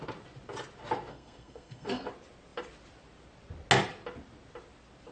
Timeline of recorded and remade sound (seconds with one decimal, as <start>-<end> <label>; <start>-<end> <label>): 0.0-1.1 recorded; 1.1-2.1 remade; 2.1-5.1 recorded